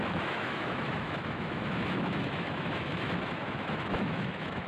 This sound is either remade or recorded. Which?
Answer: remade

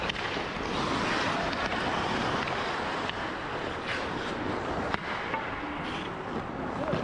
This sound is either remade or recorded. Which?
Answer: recorded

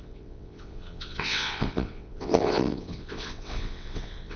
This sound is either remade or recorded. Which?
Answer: remade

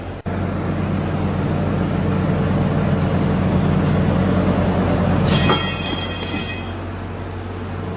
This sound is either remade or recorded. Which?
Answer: recorded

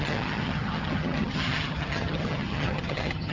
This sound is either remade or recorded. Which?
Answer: remade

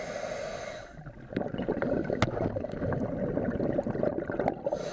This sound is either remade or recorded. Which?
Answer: recorded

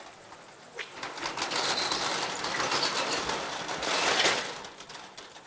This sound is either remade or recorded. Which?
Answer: recorded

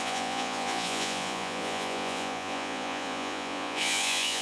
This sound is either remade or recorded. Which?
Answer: remade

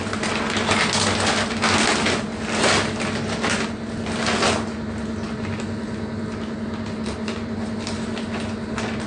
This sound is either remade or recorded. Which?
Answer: recorded